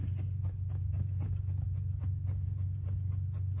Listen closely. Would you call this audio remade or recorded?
recorded